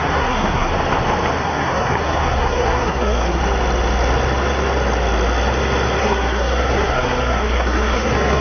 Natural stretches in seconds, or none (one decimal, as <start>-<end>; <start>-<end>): 0.7-1.4; 3.4-6.0